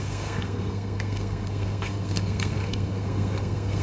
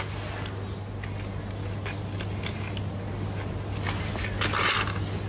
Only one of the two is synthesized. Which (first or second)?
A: first